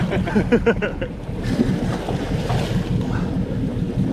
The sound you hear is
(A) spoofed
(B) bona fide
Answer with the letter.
B